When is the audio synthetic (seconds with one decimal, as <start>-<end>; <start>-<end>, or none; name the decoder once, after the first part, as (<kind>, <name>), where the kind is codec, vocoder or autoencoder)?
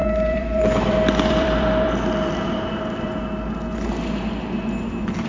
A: 0.0-3.2 (vocoder, BigVGAN v2)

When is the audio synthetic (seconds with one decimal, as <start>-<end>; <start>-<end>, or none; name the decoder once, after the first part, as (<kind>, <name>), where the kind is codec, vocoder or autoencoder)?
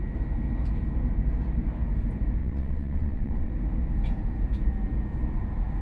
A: 2.4-3.5 (vocoder, WaveNeXt)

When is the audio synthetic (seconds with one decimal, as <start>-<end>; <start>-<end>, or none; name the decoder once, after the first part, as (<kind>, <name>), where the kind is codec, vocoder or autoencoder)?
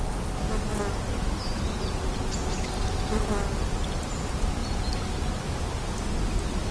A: none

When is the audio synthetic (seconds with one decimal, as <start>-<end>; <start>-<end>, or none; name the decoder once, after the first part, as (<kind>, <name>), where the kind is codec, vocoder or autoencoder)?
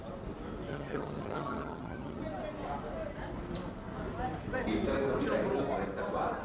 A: 0.7-2.2 (vocoder, HiFi-GAN)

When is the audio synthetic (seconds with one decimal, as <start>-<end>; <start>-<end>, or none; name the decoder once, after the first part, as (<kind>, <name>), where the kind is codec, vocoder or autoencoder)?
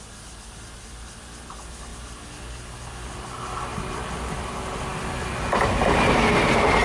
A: none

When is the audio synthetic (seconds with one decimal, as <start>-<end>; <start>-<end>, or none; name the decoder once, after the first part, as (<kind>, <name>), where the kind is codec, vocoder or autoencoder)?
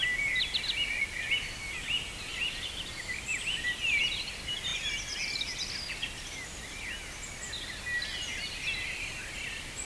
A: none